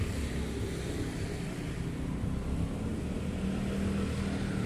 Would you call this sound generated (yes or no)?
no